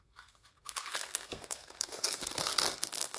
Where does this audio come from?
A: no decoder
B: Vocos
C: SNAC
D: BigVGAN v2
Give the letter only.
C